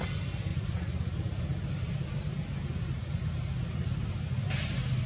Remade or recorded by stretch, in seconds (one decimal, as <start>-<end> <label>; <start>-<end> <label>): 0.0-5.1 recorded